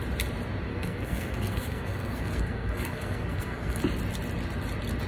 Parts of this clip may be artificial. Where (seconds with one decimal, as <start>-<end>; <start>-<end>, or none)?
0.7-3.8